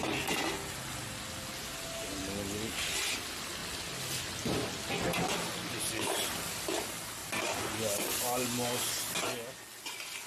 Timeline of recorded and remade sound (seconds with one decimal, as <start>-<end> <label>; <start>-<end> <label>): 0.0-10.3 recorded